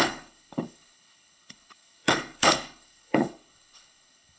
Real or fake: fake